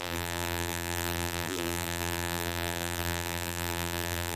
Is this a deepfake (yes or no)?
yes